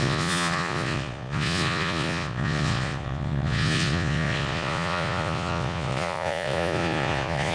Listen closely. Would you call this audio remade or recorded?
remade